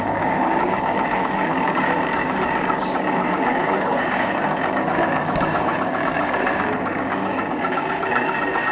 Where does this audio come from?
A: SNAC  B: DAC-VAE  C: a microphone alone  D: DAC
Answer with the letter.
D